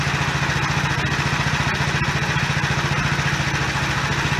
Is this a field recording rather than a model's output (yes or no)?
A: yes